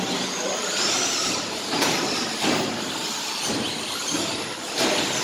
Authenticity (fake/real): fake